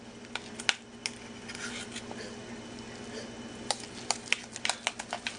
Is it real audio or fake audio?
real